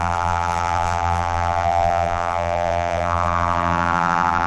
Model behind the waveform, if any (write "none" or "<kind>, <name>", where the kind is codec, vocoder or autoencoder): vocoder, BigVGAN v2